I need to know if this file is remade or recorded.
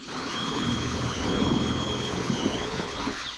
remade